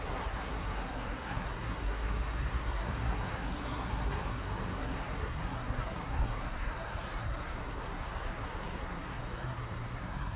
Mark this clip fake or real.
fake